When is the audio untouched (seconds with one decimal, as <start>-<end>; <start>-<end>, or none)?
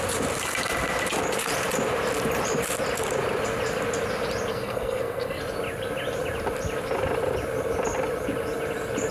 0.0-4.5; 5.4-9.1